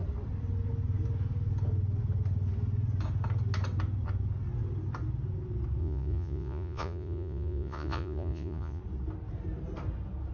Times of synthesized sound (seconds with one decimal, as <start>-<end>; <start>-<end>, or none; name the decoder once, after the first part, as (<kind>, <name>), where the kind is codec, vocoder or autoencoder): 5.8-8.8 (vocoder, Vocos)